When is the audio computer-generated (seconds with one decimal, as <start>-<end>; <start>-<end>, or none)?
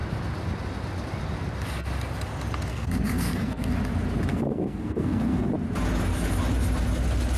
2.7-3.7; 4.3-5.5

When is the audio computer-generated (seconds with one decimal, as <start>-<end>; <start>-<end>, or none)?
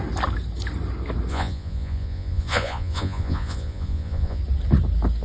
1.3-4.4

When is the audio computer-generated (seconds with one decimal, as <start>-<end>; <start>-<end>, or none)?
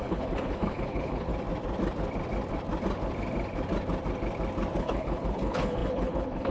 0.0-1.3; 4.8-6.5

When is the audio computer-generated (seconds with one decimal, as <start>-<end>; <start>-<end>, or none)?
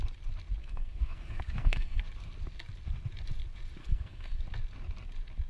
0.6-2.0; 3.8-4.4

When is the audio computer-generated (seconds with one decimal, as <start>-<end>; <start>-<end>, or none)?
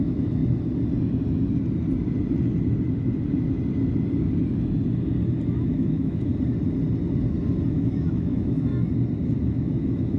0.0-0.4; 5.5-6.3; 7.7-8.7; 9.4-10.2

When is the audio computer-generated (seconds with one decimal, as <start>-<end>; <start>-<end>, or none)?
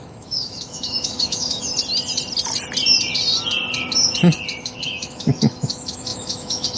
0.0-1.7; 4.6-6.8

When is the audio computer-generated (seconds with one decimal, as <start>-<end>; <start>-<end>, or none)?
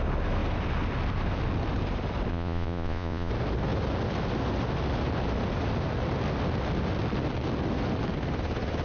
2.3-3.3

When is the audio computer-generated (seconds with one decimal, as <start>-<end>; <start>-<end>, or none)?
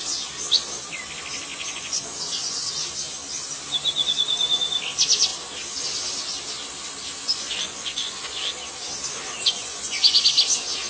1.5-2.7; 7.2-8.4; 9.4-10.2